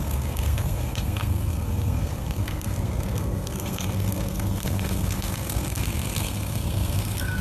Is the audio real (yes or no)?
no